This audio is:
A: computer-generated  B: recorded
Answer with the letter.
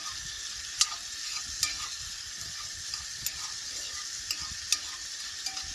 B